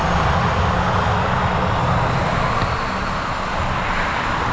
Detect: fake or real real